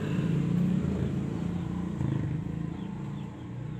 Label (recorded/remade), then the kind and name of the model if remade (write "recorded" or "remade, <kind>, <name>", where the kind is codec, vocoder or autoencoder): recorded